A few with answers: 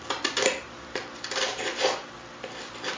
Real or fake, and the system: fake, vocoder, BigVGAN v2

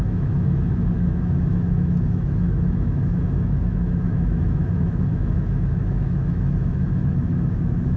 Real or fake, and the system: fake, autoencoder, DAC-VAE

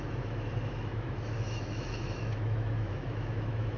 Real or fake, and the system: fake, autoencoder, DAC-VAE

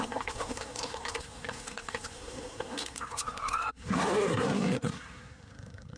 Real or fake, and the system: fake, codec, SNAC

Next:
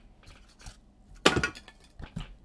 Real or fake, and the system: real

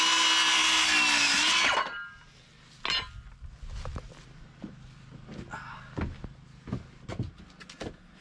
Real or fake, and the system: real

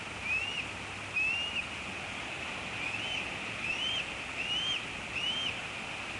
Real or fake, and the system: real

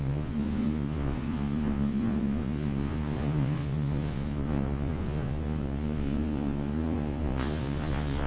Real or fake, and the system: fake, vocoder, Vocos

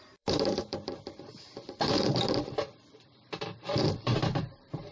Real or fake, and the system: fake, vocoder, BigVGAN v2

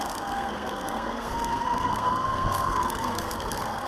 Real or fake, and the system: fake, codec, SNAC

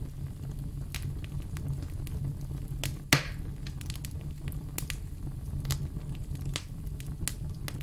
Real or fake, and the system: real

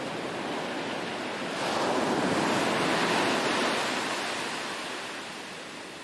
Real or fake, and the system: real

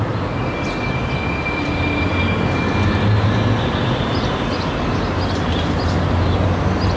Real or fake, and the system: real